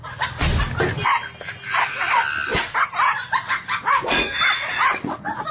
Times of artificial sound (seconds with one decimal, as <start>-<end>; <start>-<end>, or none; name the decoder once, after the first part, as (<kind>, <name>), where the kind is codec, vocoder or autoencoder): 0.0-0.5 (vocoder, Vocos); 3.8-5.5